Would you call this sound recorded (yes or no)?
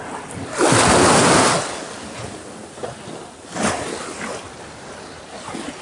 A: yes